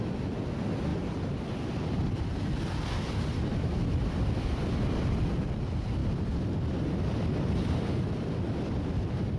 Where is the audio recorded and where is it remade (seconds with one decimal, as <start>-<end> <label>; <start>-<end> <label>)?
0.0-9.4 recorded